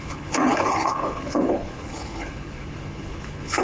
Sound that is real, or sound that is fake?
fake